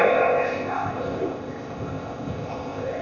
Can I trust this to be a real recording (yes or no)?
no